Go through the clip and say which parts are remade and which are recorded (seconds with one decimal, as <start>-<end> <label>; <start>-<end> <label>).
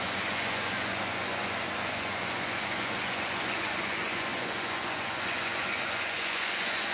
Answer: 0.0-6.9 remade